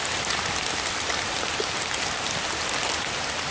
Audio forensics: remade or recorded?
recorded